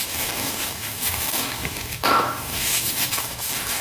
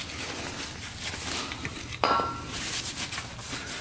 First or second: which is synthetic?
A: first